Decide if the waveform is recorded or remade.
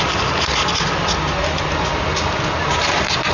recorded